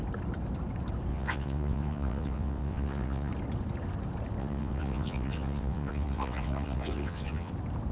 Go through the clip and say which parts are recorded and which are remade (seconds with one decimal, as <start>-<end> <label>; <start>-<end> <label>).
0.0-1.1 recorded; 1.1-3.3 remade; 3.3-4.4 recorded; 4.4-7.5 remade; 7.5-7.9 recorded